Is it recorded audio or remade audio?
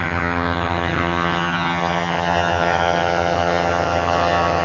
remade